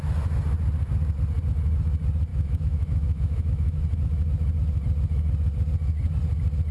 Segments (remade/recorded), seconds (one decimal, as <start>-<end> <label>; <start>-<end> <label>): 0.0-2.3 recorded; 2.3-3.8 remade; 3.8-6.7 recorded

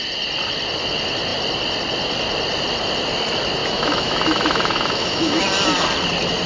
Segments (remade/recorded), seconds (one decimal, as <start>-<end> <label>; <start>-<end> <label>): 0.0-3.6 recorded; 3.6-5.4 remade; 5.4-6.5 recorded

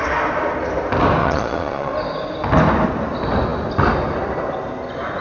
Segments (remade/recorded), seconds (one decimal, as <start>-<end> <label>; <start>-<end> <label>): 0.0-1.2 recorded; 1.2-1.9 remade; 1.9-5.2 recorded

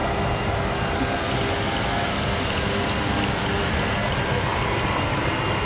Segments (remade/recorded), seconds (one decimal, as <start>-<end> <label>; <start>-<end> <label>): 0.0-5.7 recorded

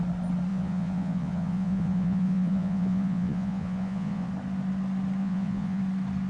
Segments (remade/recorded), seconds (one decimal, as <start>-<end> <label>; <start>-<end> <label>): 0.0-0.5 recorded; 0.5-4.3 remade; 4.3-5.2 recorded; 5.2-5.8 remade; 5.8-6.3 recorded

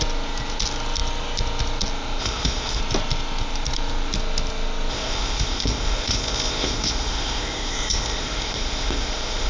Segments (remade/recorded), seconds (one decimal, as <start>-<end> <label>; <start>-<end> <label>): 0.0-2.2 recorded; 2.2-2.8 remade; 2.8-4.9 recorded; 4.9-9.5 remade